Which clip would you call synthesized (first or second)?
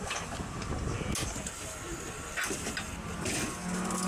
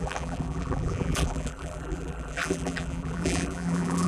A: second